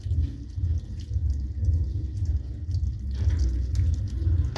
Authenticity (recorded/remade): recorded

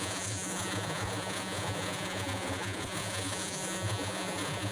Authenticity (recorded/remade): remade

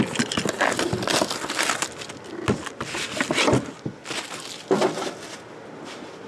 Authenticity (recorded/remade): recorded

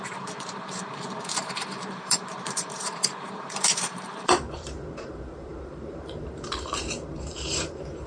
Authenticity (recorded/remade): remade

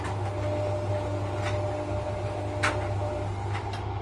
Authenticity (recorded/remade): recorded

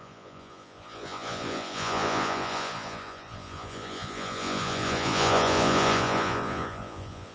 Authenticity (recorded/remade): remade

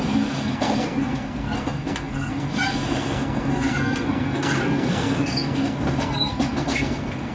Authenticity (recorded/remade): remade